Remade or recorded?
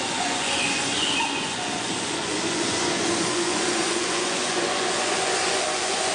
remade